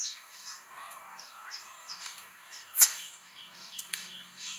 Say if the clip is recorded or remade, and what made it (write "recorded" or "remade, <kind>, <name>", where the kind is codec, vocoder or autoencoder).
remade, codec, DAC